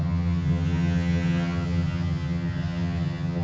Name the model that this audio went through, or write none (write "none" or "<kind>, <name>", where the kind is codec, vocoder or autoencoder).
vocoder, HiFi-GAN